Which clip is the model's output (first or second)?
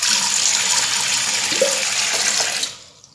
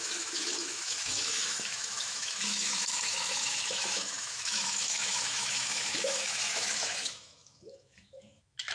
second